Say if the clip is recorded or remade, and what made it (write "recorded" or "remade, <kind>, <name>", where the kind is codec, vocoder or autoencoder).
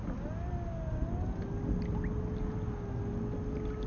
recorded